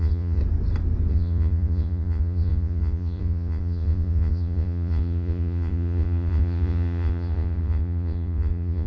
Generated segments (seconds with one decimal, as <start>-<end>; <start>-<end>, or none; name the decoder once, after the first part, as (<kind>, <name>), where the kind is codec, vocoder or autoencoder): 0.0-0.4 (vocoder, Vocos); 1.1-8.9